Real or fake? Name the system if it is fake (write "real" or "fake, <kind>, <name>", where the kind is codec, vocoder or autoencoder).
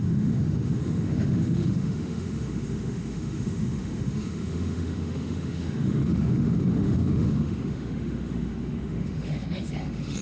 fake, autoencoder, DAC-VAE